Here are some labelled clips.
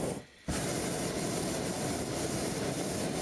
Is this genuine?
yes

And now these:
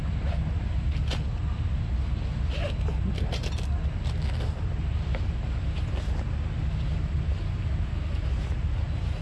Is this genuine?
yes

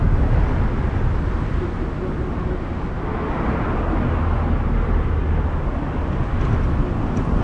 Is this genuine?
yes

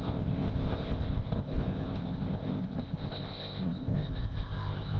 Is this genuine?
no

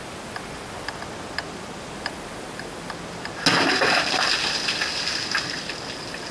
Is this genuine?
yes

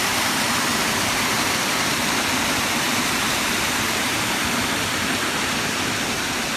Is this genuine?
no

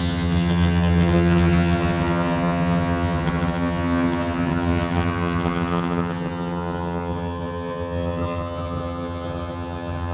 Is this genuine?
no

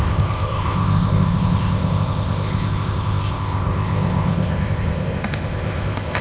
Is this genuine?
no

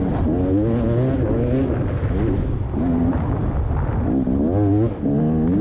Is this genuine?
yes